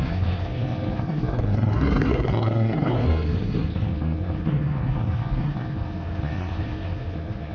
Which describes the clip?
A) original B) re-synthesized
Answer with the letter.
B